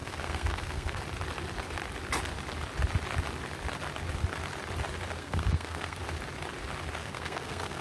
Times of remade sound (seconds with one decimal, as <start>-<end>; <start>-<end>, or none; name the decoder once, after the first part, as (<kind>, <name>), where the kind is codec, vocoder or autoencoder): 0.0-1.0 (codec, SNAC); 5.2-6.0; 7.0-7.8